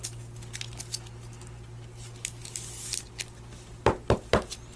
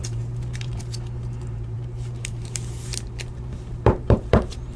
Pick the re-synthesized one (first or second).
second